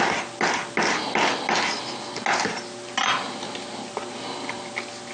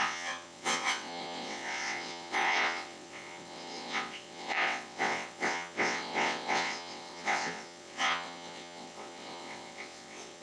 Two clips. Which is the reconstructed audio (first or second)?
second